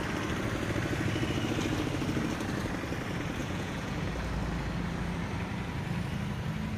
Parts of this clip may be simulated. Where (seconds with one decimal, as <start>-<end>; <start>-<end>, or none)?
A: 3.4-4.1